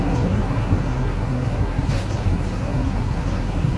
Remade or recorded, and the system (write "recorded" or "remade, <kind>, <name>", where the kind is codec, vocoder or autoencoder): remade, codec, SNAC